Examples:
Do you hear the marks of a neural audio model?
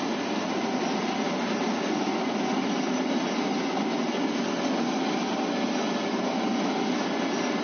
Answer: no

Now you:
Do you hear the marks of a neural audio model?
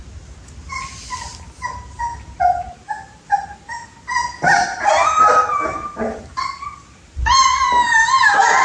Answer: no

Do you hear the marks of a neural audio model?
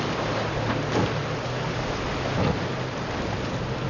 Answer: no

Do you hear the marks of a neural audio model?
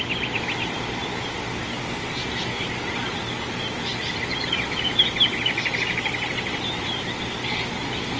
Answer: no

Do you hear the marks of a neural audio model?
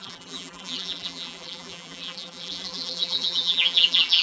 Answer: yes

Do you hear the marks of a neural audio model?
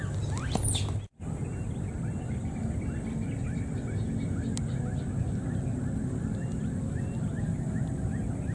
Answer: no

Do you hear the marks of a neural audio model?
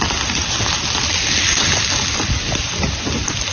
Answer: no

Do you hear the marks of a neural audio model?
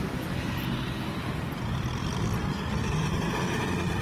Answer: yes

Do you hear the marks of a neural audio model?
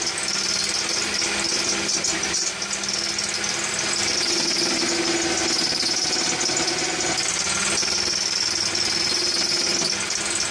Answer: no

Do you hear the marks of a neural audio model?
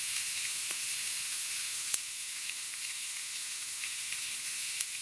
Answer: yes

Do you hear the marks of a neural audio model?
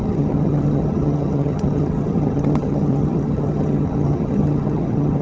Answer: yes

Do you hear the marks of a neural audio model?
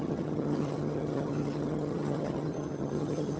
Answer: yes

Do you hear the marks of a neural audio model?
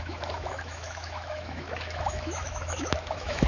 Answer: yes